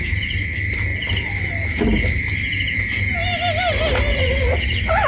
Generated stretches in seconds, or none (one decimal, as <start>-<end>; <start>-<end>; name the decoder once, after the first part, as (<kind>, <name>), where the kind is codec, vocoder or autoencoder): 4.1-5.1 (vocoder, WaveNeXt)